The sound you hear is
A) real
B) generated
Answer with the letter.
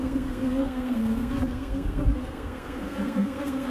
B